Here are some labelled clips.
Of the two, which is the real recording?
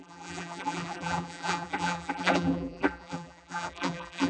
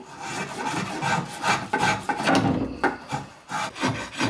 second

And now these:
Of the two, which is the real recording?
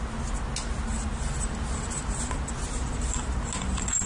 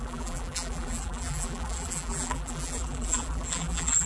first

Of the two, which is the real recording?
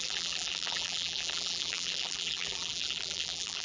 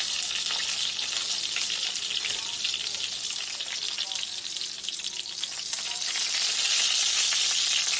second